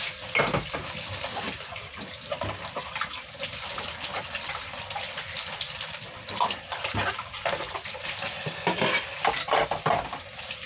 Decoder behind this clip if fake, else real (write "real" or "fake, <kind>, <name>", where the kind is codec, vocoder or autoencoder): real